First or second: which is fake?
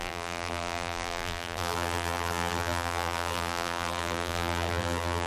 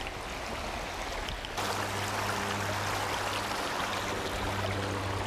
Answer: first